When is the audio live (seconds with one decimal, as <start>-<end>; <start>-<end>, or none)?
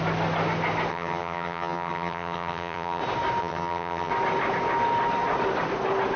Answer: 0.0-0.9; 3.0-3.4; 4.1-6.2